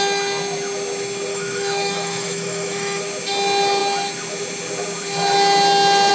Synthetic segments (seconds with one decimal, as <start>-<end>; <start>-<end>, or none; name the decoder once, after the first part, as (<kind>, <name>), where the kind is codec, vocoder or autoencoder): 1.3-3.0 (autoencoder, DAC-VAE)